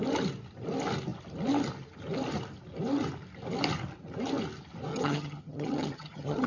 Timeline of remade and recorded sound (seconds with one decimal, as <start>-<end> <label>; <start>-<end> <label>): 0.0-4.9 recorded; 4.9-6.5 remade